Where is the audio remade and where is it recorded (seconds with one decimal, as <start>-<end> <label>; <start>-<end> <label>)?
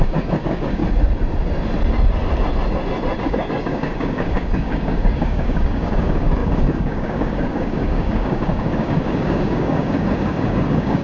0.0-0.8 remade; 0.8-3.2 recorded; 3.2-11.0 remade